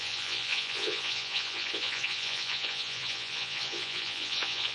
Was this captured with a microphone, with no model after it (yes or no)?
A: no